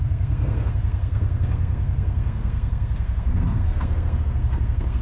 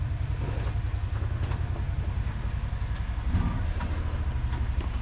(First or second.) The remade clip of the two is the first